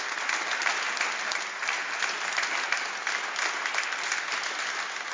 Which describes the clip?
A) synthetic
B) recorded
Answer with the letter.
B